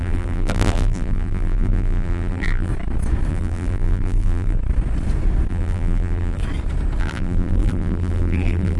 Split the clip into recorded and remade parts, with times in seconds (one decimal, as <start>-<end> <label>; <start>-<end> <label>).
0.0-2.7 remade; 2.7-3.3 recorded; 3.3-4.6 remade; 4.6-5.5 recorded; 5.5-6.4 remade; 6.4-7.0 recorded; 7.0-8.8 remade